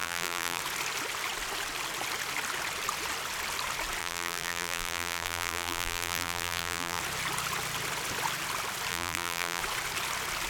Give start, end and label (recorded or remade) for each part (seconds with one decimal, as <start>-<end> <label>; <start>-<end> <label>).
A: 0.0-0.6 remade; 0.6-4.0 recorded; 4.0-7.0 remade; 7.0-8.9 recorded; 8.9-9.6 remade; 9.6-10.5 recorded